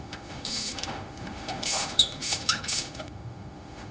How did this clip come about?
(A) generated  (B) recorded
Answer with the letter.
A